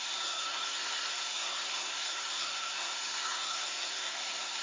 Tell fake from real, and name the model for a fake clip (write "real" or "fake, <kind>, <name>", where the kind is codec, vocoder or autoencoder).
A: fake, codec, SNAC